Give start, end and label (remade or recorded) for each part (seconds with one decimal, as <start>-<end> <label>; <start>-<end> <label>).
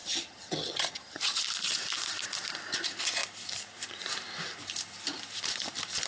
0.0-1.4 remade; 1.4-6.1 recorded